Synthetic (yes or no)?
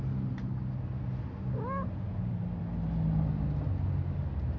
no